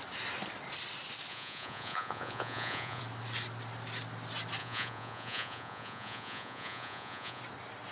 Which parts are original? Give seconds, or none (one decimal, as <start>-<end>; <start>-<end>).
0.0-1.3; 3.0-4.6; 7.4-7.9